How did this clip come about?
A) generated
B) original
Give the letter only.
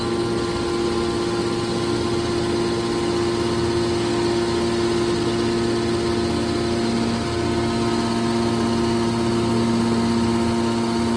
B